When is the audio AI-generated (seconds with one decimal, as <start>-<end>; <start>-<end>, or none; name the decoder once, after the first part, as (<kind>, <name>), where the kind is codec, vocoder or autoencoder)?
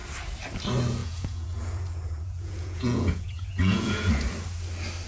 1.0-4.1 (vocoder, Vocos)